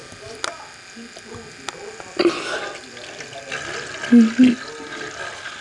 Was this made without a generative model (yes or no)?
yes